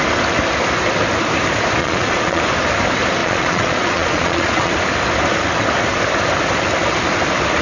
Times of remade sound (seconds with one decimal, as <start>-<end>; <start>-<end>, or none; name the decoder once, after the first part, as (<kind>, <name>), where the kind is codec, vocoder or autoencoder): 1.8-2.4 (vocoder, Vocos); 3.2-4.7